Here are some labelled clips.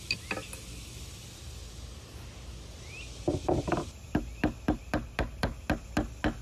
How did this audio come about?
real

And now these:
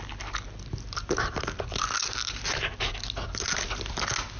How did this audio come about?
real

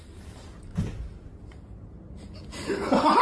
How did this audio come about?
real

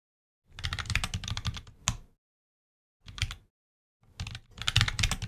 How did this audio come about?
real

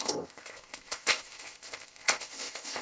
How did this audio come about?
fake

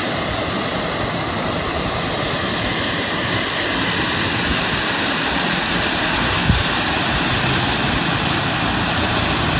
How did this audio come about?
real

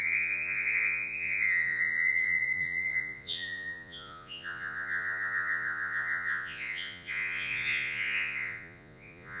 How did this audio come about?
fake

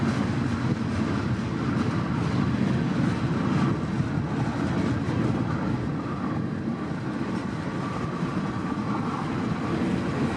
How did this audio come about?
real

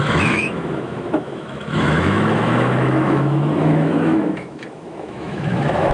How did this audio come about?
fake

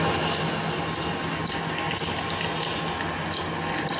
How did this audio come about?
real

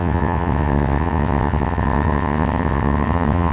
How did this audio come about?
fake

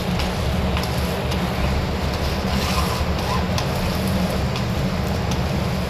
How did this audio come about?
real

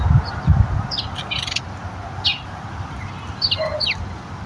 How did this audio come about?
real